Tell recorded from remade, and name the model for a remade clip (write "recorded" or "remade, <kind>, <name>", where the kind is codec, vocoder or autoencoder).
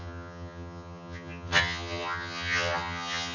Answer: remade, vocoder, HiFi-GAN